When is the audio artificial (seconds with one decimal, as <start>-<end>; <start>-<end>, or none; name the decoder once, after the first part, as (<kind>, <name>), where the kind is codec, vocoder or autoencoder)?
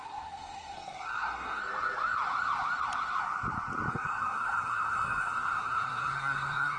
0.0-1.6 (codec, SNAC); 3.9-6.8